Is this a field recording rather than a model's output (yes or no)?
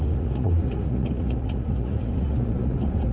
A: no